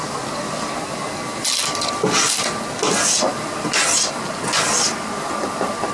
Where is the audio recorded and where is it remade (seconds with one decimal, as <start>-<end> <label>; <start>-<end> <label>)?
0.0-5.9 recorded